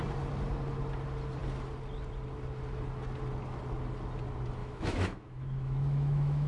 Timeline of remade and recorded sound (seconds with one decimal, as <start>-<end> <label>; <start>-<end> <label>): 0.0-4.6 recorded; 4.6-6.5 remade